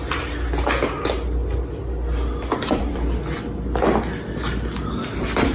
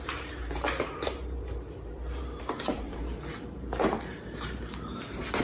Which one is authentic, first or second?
first